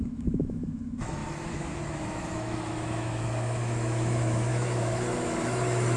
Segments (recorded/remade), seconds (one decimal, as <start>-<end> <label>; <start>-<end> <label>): 0.0-6.0 remade